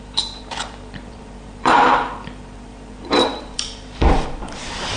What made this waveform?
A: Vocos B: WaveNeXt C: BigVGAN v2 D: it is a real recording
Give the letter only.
C